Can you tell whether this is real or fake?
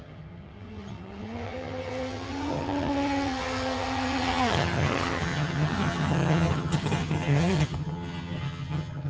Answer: fake